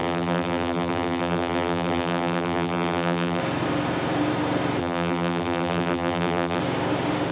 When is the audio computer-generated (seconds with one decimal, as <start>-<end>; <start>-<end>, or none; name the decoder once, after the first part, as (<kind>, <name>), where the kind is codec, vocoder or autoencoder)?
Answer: 0.0-3.4 (vocoder, BigVGAN v2); 4.8-6.6